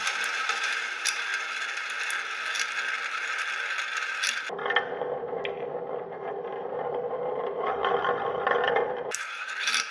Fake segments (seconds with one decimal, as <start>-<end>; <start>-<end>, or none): 0.0-1.3; 6.1-9.9